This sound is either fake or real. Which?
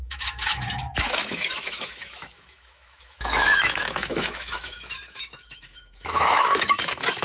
fake